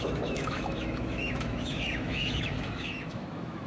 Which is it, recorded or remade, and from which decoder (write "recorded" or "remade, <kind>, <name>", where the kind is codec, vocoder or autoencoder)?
remade, autoencoder, DAC-VAE